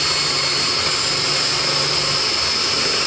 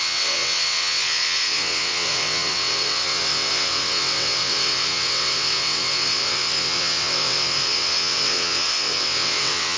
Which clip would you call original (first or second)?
first